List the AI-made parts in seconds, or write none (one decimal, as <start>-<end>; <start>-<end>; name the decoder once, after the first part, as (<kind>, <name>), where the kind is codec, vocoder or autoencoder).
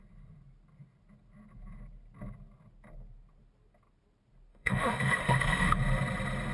4.5-5.8 (autoencoder, DAC-VAE)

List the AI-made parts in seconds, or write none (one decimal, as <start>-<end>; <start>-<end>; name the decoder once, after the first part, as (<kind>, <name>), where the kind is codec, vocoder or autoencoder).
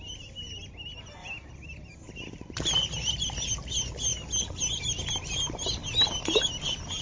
none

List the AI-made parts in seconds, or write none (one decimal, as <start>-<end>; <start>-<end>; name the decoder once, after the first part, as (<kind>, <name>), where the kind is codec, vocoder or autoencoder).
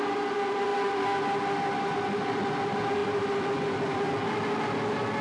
3.0-4.0 (vocoder, BigVGAN v2)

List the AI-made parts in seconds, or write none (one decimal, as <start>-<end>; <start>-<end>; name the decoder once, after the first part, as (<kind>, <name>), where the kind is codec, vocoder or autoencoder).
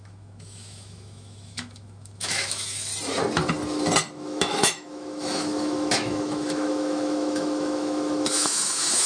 0.0-2.9 (autoencoder, DAC-VAE); 4.1-9.1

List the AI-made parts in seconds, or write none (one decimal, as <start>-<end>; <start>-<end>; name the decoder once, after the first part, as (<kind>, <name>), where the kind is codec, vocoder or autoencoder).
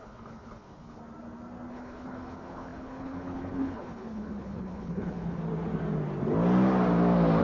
0.0-1.0 (codec, HILCodec); 1.7-5.4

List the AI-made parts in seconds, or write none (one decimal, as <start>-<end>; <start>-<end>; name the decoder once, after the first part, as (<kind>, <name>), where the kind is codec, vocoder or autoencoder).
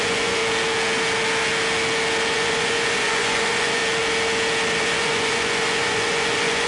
0.0-0.4 (vocoder, Vocos); 2.3-3.8; 4.8-6.7